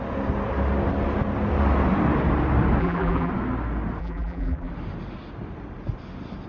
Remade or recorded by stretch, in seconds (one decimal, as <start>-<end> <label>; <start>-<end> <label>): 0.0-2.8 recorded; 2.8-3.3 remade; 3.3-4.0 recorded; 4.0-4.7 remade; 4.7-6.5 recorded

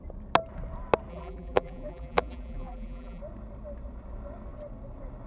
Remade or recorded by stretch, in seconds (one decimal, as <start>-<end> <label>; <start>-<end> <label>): 0.0-1.1 recorded; 1.1-3.2 remade; 3.2-5.3 recorded

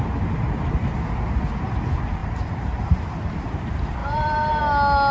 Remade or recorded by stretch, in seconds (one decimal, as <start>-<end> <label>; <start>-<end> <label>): 0.0-2.2 recorded; 2.2-3.5 remade; 3.5-4.0 recorded; 4.0-4.6 remade; 4.6-5.1 recorded